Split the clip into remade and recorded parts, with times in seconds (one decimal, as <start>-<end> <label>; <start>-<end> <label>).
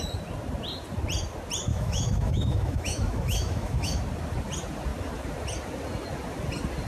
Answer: 0.0-1.7 recorded; 1.7-4.0 remade; 4.0-6.9 recorded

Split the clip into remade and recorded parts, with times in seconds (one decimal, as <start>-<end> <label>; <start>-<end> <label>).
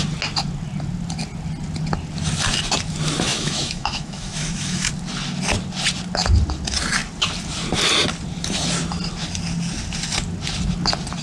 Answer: 0.0-3.3 recorded; 3.3-4.9 remade; 4.9-11.2 recorded